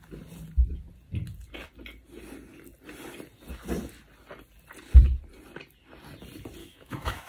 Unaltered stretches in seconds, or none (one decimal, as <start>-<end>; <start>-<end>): 0.0-6.6